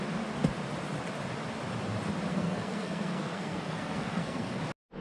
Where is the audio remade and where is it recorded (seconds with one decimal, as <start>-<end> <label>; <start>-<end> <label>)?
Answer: 0.0-2.3 recorded; 2.3-4.6 remade; 4.6-5.0 recorded